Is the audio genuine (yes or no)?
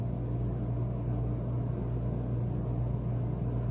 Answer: yes